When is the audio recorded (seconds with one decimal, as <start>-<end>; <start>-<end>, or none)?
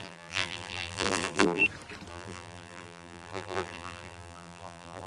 1.6-2.1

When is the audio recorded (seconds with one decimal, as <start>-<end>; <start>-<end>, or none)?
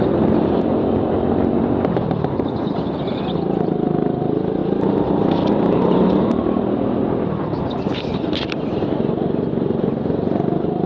0.0-10.9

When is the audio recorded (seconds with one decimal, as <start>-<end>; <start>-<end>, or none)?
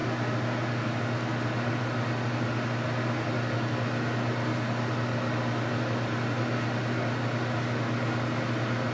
0.0-8.9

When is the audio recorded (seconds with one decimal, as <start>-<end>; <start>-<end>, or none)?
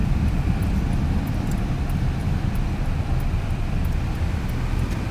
1.7-2.2; 4.5-5.1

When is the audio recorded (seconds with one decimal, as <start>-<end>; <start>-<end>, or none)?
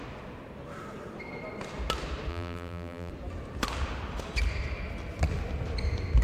0.0-2.3; 3.1-6.2